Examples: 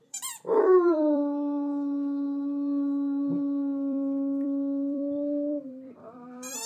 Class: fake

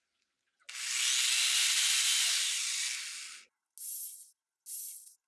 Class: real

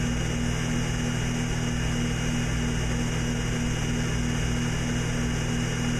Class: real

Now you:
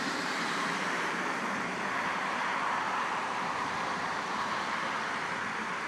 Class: fake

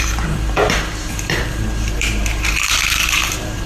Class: fake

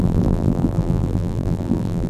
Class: fake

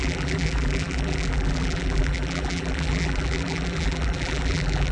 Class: fake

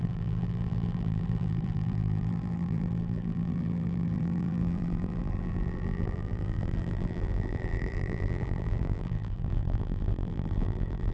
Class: fake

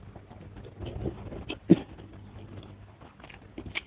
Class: real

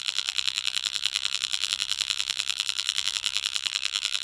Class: fake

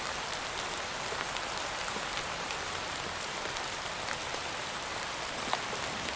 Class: fake